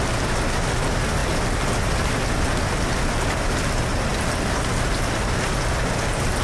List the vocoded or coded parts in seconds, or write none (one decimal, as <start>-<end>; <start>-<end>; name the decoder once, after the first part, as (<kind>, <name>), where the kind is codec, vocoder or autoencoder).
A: none